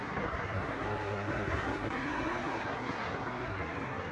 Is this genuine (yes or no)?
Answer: no